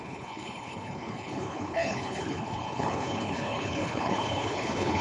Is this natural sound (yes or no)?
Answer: no